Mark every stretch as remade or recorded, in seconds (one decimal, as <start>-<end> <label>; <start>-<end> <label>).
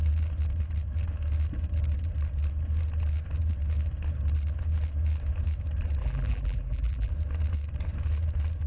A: 0.0-6.0 recorded; 6.0-7.1 remade; 7.1-8.7 recorded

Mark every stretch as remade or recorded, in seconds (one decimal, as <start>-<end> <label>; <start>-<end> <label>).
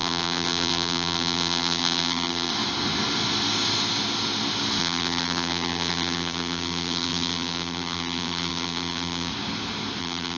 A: 0.0-2.5 remade; 2.5-4.8 recorded; 4.8-9.3 remade; 9.3-10.0 recorded; 10.0-10.4 remade